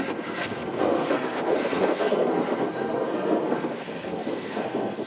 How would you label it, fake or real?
fake